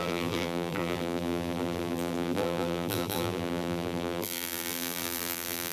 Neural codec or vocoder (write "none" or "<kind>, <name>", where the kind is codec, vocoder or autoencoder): vocoder, BigVGAN v2